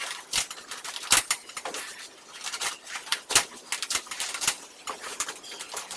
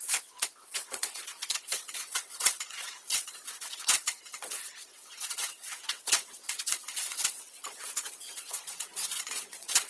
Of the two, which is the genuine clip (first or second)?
first